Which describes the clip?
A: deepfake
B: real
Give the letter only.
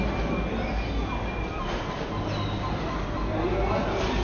B